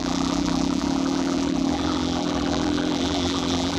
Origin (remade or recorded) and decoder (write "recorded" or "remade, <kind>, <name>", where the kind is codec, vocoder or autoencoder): remade, vocoder, BigVGAN v2